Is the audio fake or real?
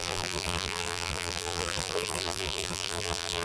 fake